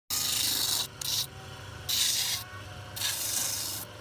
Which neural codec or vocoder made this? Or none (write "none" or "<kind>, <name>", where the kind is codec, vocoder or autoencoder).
none